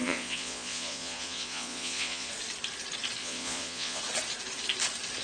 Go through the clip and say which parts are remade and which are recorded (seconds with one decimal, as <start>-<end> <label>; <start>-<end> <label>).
0.0-2.3 remade; 2.3-3.2 recorded; 3.2-4.0 remade; 4.0-5.2 recorded